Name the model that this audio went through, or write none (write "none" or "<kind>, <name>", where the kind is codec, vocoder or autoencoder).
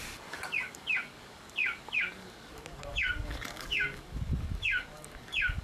codec, DAC